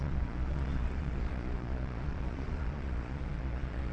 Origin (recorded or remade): remade